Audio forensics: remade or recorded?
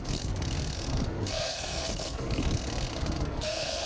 remade